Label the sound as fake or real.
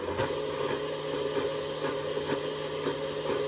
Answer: real